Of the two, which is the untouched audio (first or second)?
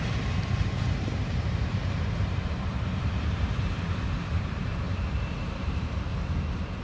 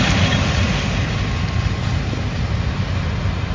second